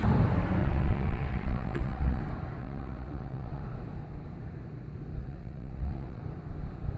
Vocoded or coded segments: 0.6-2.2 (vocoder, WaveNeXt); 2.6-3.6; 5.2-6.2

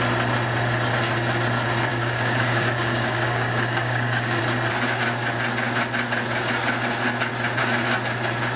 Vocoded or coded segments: 1.9-4.4 (codec, DAC)

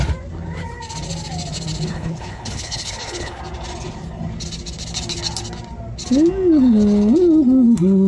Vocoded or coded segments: 1.9-3.4 (codec, HILCodec)